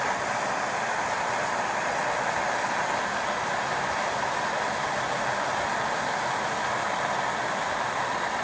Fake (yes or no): no